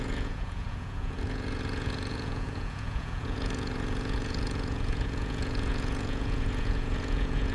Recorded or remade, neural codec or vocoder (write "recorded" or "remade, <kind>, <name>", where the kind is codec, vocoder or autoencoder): remade, vocoder, Vocos